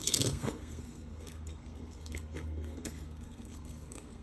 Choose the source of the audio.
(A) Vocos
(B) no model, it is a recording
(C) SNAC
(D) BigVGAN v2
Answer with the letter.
C